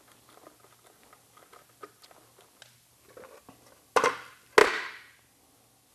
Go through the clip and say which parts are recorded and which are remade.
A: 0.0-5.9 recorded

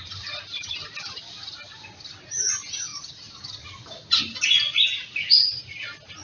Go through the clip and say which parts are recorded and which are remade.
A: 0.0-2.9 recorded; 2.9-3.4 remade; 3.4-6.2 recorded

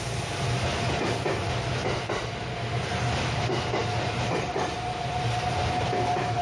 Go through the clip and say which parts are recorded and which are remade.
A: 0.0-6.4 recorded

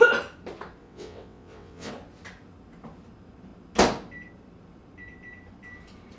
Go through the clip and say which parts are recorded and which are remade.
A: 0.0-0.8 recorded; 0.8-1.9 remade; 1.9-6.2 recorded

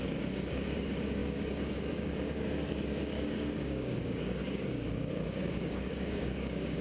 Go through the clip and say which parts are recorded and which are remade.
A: 0.0-6.8 remade

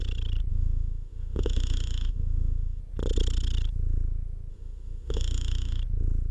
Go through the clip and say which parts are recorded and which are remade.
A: 0.0-0.5 recorded; 0.5-2.8 remade; 2.8-4.5 recorded; 4.5-5.8 remade; 5.8-6.3 recorded

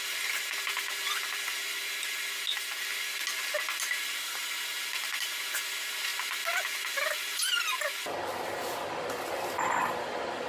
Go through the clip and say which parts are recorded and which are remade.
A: 0.0-10.5 recorded